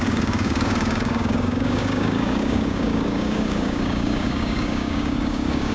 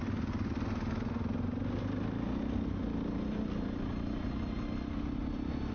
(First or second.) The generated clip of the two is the first